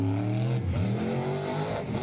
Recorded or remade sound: recorded